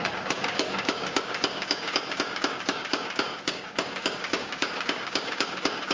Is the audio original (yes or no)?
no